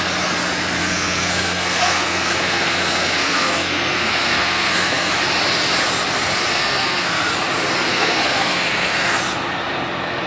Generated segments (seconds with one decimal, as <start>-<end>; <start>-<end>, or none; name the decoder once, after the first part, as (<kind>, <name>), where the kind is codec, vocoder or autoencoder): 0.8-5.1 (codec, SNAC); 6.5-7.3; 7.9-9.2